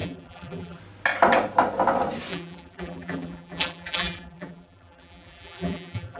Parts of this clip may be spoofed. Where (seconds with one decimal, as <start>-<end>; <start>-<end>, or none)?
0.0-0.8; 2.3-6.2